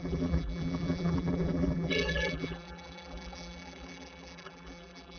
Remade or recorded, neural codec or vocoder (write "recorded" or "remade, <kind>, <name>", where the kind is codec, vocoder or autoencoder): remade, vocoder, BigVGAN v2